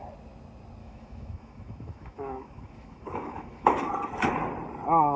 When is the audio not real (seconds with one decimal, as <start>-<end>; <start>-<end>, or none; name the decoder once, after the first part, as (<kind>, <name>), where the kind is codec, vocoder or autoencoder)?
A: 0.8-3.9 (autoencoder, DAC-VAE)